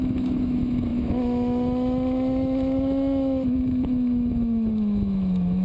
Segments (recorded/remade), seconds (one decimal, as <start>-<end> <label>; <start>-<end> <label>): 0.0-5.6 remade